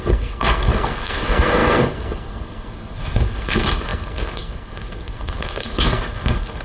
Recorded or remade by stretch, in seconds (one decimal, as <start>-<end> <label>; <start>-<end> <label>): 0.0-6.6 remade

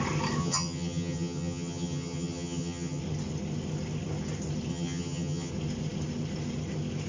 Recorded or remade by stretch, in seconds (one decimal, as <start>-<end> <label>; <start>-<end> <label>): 0.0-0.4 recorded; 0.4-3.0 remade; 3.0-4.7 recorded; 4.7-5.5 remade; 5.5-7.1 recorded

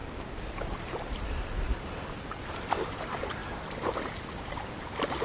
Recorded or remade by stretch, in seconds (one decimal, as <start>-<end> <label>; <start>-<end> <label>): 0.0-5.2 recorded

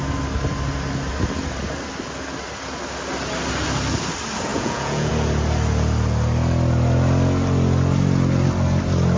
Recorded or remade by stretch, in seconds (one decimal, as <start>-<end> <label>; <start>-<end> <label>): 0.0-4.5 recorded; 4.5-5.1 remade; 5.1-9.2 recorded

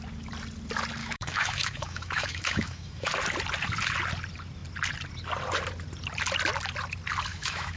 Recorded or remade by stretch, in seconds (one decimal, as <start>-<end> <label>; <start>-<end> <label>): 0.0-1.0 recorded; 1.0-3.1 remade; 3.1-7.3 recorded; 7.3-7.8 remade

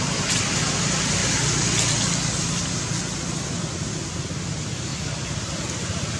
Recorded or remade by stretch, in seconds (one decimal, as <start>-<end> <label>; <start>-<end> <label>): 0.0-4.9 recorded; 4.9-5.5 remade; 5.5-6.2 recorded

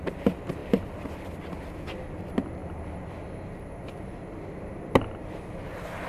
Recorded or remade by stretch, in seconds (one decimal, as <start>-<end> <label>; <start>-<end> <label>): 0.0-6.1 recorded

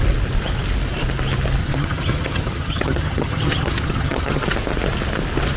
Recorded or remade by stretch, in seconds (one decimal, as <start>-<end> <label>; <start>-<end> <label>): 0.0-1.6 recorded; 1.6-4.4 remade; 4.4-5.6 recorded